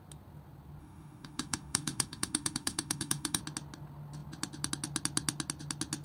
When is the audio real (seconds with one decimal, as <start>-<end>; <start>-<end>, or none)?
0.0-0.8; 3.4-6.0